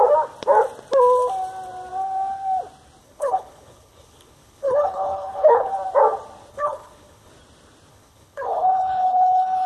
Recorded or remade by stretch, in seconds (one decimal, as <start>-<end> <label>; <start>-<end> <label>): 0.0-3.0 recorded; 3.0-5.7 remade; 5.7-6.5 recorded; 6.5-7.3 remade; 7.3-7.9 recorded; 7.9-9.7 remade